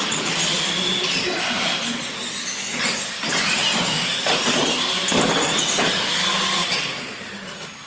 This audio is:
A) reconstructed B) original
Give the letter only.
B